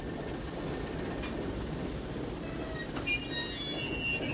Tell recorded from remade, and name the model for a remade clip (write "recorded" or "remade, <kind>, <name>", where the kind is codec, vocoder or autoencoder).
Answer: recorded